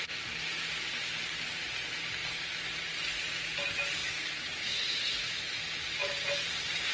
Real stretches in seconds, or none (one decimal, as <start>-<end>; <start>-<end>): 0.0-4.0; 5.6-6.9